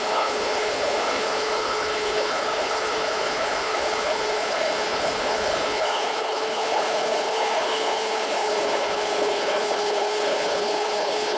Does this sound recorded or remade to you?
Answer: remade